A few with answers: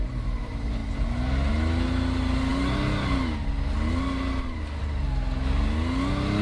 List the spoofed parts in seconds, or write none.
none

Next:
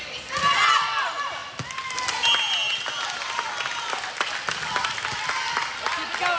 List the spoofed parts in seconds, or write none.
none

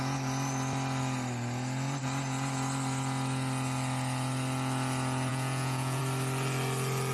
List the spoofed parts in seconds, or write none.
5.3-6.0